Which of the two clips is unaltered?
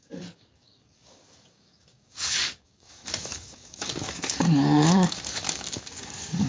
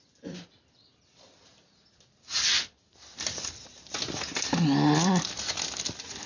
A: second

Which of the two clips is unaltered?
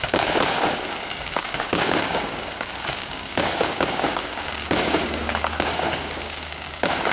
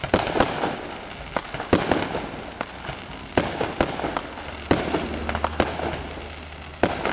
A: second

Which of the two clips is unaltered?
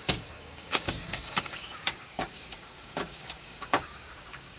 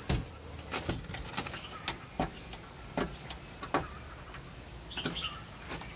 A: second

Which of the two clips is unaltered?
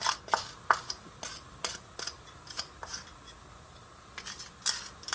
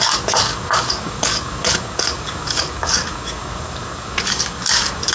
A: first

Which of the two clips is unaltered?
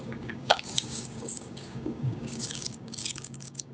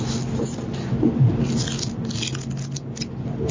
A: second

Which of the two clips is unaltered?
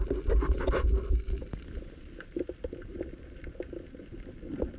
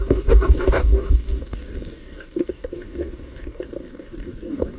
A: first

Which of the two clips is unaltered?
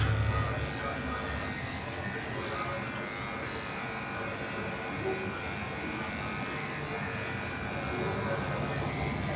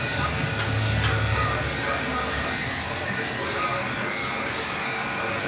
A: first